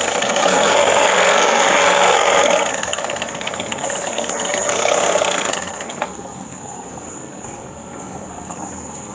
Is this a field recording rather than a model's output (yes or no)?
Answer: no